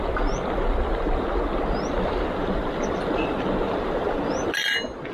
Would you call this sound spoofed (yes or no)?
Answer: no